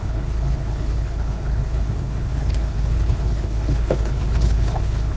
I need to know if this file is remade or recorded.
remade